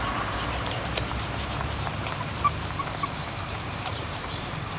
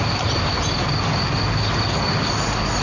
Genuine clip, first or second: second